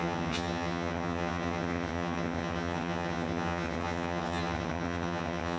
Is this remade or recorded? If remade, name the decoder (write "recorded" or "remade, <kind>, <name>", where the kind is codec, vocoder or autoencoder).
remade, vocoder, HiFi-GAN